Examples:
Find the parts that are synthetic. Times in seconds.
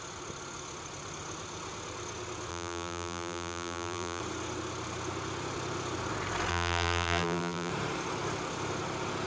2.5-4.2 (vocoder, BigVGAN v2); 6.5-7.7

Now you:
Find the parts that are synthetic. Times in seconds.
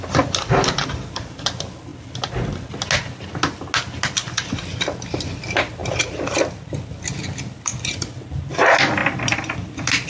9.0-9.7 (vocoder, BigVGAN v2)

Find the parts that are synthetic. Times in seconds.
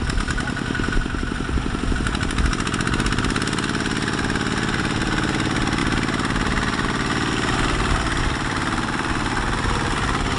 0.0-10.4 (vocoder, BigVGAN v2)